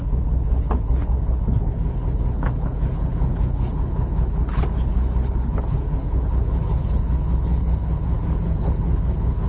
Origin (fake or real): fake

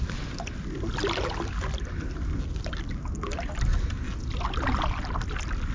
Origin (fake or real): real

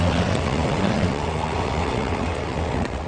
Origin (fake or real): fake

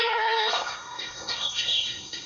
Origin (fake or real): fake